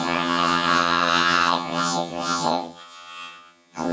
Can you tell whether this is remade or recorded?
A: remade